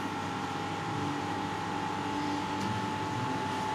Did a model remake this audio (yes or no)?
no